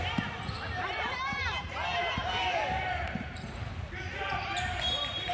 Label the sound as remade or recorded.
remade